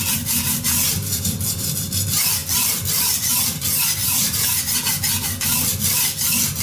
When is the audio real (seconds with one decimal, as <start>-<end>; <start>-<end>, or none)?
0.0-4.0; 4.6-6.6